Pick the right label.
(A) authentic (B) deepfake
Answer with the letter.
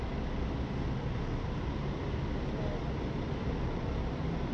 A